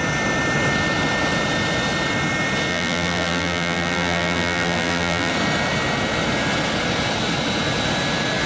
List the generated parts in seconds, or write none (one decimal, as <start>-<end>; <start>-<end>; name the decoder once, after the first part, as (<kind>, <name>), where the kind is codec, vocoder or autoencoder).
2.7-5.3 (vocoder, BigVGAN v2)